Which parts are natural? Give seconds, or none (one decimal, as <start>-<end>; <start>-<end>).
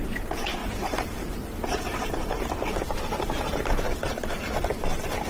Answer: 0.0-0.6; 3.8-5.3